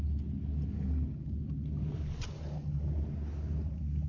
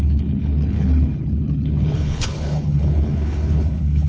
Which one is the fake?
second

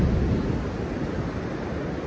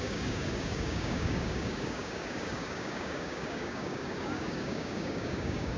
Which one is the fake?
second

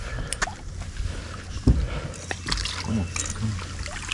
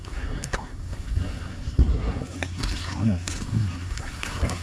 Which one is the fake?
second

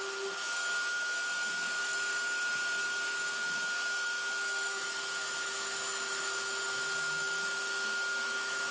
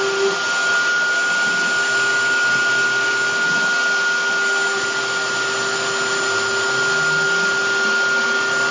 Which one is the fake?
first